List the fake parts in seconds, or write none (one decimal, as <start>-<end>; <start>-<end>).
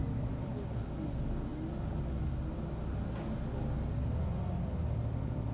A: none